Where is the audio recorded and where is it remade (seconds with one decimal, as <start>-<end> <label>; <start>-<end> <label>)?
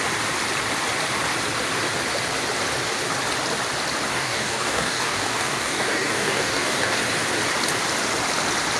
0.0-4.1 recorded; 4.1-7.0 remade; 7.0-8.8 recorded